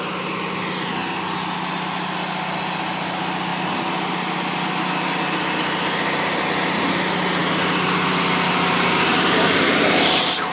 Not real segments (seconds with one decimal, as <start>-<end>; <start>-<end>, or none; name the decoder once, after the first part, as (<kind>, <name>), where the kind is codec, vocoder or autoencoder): none